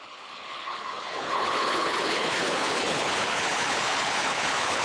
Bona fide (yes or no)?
no